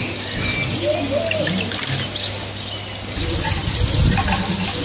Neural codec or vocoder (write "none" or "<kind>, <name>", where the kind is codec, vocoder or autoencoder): none